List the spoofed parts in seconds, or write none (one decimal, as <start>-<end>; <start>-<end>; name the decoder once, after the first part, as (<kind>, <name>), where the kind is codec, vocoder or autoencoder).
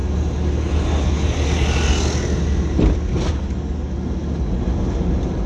none